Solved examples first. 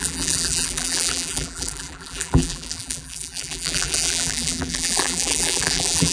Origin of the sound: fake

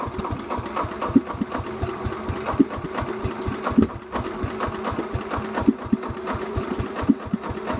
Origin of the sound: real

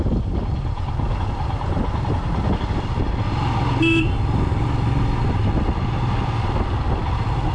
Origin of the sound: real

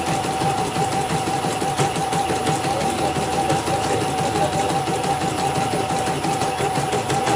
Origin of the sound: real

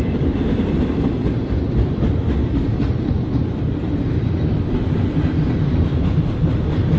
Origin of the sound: real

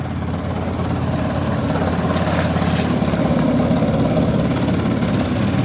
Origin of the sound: real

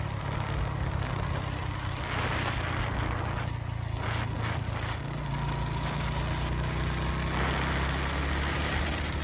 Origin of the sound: real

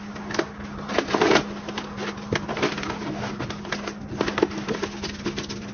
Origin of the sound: real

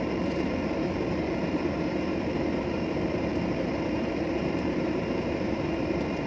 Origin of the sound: fake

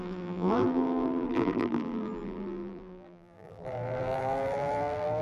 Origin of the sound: fake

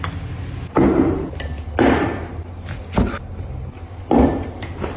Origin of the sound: real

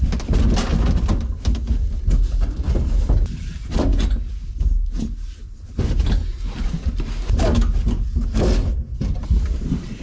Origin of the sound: real